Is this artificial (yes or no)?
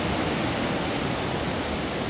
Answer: no